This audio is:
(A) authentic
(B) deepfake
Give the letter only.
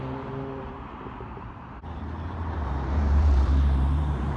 B